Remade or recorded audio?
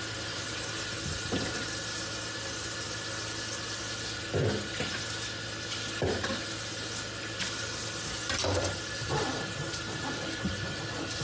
recorded